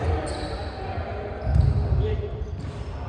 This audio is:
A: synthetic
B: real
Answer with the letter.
B